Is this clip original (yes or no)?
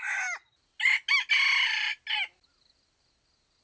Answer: yes